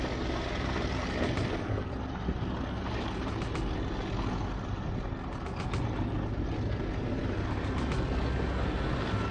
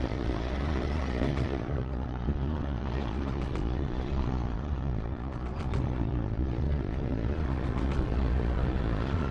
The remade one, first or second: second